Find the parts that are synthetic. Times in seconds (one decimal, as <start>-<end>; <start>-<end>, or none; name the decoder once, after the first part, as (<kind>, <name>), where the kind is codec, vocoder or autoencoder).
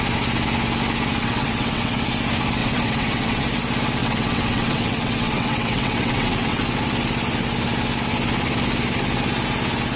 1.2-2.0 (vocoder, WaveNeXt); 2.6-3.4; 4.0-6.6